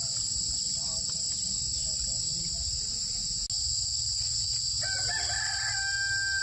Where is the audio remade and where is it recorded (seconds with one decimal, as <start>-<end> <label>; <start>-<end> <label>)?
0.0-6.4 recorded